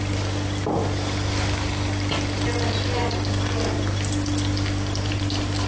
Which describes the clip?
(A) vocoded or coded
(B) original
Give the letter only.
B